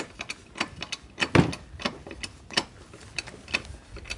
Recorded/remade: recorded